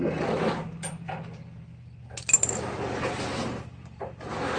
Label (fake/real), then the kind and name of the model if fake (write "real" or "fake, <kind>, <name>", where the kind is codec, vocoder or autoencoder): real